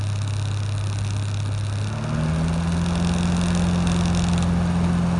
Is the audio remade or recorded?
recorded